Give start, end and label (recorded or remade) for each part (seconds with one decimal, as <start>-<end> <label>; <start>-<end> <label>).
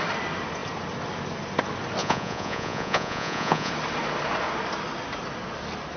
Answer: 0.0-2.0 recorded; 2.0-3.7 remade; 3.7-6.0 recorded